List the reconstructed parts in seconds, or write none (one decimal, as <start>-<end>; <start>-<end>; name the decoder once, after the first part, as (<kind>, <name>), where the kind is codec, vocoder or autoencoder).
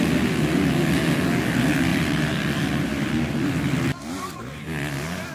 1.9-4.4 (vocoder, BigVGAN v2)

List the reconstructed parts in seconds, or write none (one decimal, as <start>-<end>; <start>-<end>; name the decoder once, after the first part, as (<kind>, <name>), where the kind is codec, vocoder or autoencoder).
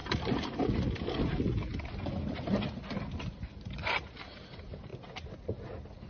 3.2-4.9 (vocoder, BigVGAN v2)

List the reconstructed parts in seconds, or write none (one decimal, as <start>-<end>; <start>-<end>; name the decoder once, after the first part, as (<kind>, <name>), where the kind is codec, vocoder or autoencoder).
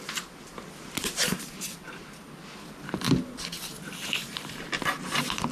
none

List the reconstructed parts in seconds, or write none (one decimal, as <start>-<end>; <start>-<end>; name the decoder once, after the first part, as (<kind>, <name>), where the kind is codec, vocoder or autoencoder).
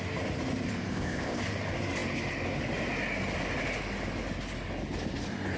0.9-1.4 (codec, ZipCodec)